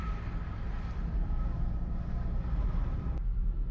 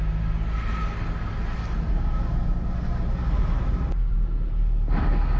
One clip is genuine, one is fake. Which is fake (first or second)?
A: first